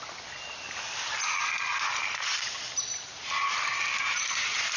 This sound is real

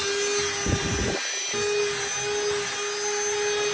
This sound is real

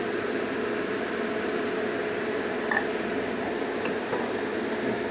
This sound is real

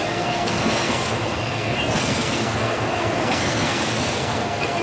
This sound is fake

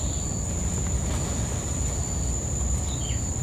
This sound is real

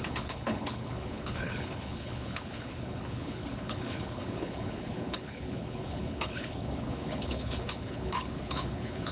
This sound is fake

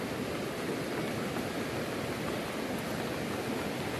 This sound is real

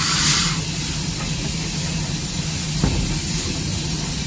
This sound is real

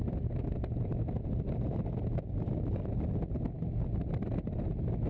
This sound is real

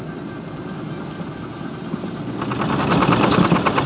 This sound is real